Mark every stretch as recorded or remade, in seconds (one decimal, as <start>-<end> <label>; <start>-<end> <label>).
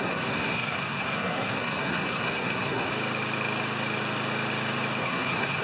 0.0-2.9 remade; 2.9-5.0 recorded; 5.0-5.6 remade